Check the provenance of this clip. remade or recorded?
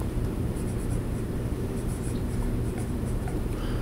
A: remade